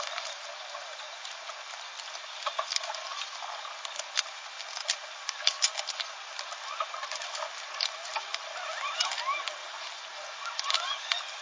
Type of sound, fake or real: real